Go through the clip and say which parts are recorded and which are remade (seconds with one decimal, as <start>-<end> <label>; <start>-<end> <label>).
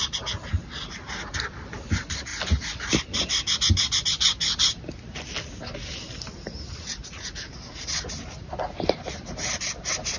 0.0-7.0 recorded; 7.0-7.5 remade; 7.5-10.2 recorded